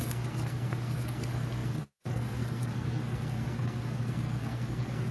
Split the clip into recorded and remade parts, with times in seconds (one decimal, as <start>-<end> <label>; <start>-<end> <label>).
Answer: 0.0-5.1 remade